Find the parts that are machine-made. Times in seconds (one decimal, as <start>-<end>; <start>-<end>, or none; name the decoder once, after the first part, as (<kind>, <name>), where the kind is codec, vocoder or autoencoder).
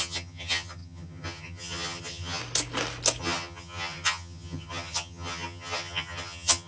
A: 0.0-2.4 (vocoder, HiFi-GAN); 3.2-6.7